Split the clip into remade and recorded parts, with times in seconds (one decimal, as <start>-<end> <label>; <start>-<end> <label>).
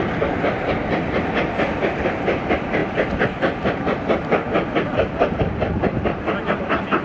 0.0-7.0 recorded